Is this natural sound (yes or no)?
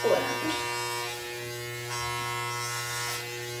yes